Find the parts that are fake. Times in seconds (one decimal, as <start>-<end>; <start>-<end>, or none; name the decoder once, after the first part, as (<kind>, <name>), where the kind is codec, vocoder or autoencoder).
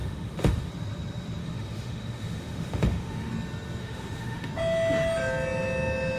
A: 0.0-0.7 (autoencoder, DAC-VAE); 1.4-3.3; 3.8-4.5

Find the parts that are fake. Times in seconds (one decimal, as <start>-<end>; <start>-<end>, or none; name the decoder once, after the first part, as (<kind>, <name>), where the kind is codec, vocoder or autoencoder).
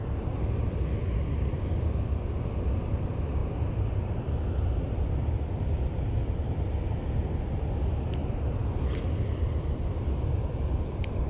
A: none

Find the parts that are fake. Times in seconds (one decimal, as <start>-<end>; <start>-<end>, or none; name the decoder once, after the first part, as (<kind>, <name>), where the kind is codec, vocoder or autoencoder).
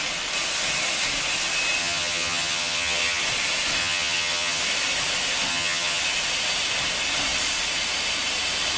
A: 1.8-3.2 (vocoder, HiFi-GAN); 3.8-4.6; 5.5-6.0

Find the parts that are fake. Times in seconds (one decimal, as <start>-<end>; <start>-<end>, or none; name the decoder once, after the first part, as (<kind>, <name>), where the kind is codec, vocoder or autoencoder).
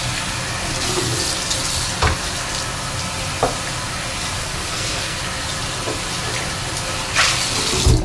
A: 4.4-5.2 (codec, SNAC)